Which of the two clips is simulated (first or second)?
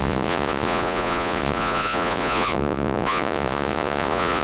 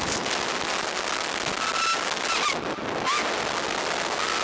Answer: first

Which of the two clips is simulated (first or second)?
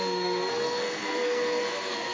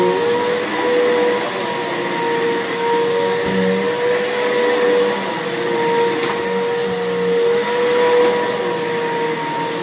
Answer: first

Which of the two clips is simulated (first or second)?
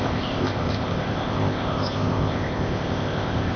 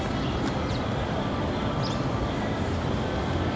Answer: first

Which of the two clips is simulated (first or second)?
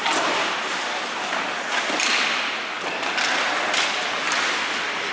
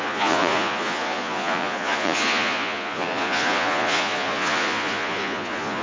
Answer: second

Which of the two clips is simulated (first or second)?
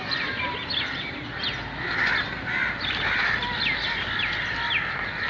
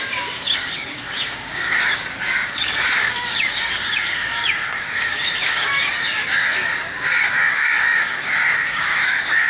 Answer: second